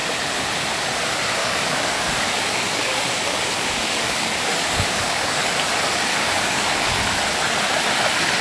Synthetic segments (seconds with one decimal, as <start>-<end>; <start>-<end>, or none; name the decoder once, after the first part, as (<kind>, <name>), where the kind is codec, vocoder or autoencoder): 1.4-5.5 (codec, DAC); 6.1-7.0